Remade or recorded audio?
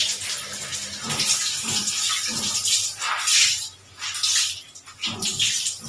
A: recorded